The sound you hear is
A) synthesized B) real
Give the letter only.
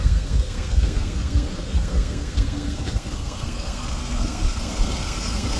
A